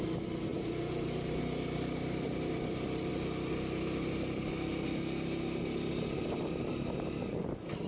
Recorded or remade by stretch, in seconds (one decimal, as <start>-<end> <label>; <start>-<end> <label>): 0.0-7.9 recorded